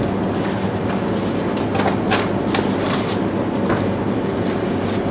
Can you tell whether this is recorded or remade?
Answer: recorded